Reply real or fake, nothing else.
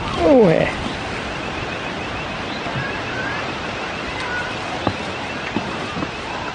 real